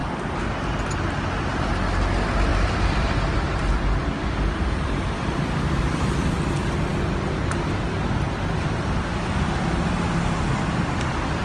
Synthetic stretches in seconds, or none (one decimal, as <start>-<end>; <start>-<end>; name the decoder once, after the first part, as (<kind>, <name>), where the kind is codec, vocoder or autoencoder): 2.5-4.9 (vocoder, BigVGAN v2)